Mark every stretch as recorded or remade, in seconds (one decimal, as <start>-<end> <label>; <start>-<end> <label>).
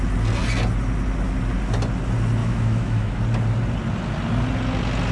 0.0-2.4 recorded; 2.4-3.2 remade; 3.2-5.1 recorded